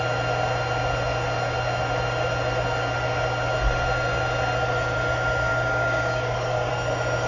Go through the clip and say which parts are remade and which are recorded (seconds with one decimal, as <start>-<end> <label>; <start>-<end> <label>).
0.0-5.5 recorded; 5.5-6.7 remade; 6.7-7.3 recorded